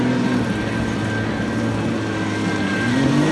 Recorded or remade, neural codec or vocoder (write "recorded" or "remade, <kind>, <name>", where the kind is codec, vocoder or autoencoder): recorded